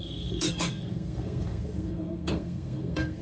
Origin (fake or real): fake